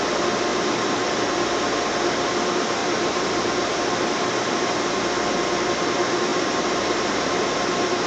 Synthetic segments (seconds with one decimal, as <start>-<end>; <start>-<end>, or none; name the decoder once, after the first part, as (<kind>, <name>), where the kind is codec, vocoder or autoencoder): 0.5-1.2 (vocoder, BigVGAN v2); 2.8-4.8; 6.3-7.4